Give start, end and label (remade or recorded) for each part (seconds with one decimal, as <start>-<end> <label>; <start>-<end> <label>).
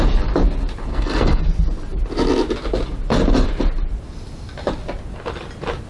0.0-0.9 recorded; 0.9-1.4 remade; 1.4-5.9 recorded